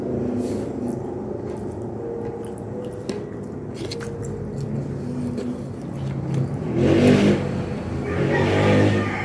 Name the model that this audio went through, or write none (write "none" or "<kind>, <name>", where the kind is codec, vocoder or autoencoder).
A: none